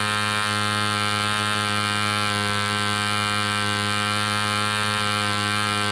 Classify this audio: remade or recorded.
recorded